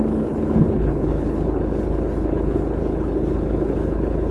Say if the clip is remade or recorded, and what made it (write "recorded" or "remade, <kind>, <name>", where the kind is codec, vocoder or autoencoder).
remade, codec, HILCodec